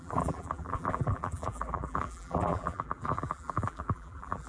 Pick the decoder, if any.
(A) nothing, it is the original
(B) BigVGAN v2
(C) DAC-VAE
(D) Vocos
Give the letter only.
B